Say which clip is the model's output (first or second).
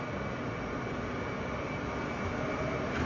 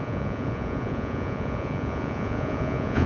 second